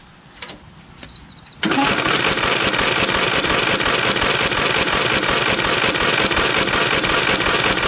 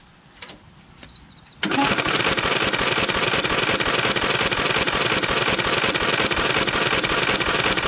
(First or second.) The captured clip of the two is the first